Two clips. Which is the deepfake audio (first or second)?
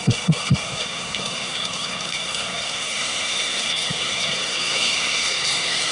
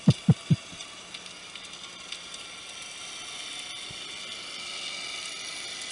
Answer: first